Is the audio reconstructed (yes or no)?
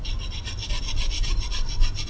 no